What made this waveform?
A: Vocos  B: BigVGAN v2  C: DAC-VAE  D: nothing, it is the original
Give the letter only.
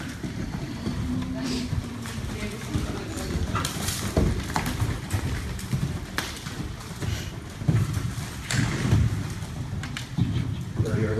B